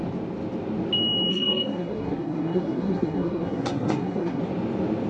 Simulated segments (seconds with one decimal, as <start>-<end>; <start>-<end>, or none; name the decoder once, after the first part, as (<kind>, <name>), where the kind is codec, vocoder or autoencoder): 1.3-4.4 (codec, SNAC)